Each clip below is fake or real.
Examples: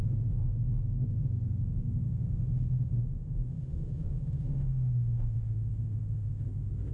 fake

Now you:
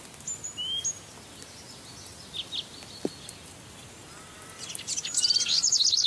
real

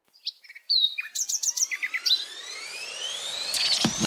fake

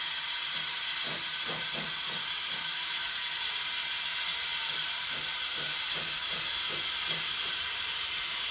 fake